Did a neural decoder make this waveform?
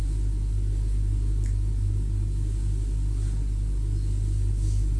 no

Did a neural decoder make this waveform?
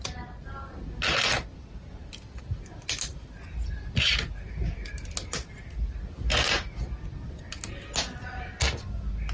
no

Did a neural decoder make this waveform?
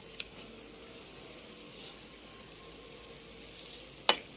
no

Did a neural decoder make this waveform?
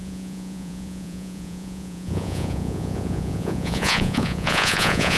yes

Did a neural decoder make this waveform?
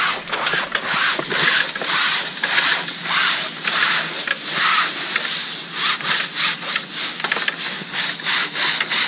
no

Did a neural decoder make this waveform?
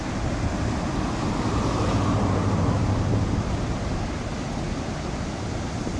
no